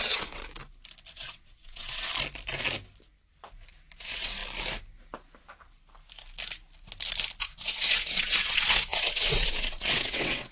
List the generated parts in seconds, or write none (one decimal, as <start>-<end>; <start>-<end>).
0.0-0.4; 1.1-2.1; 4.0-4.4; 7.4-10.5